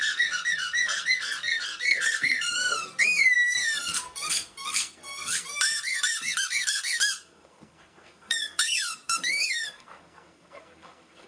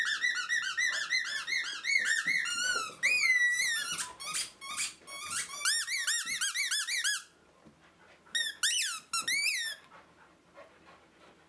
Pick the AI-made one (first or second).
first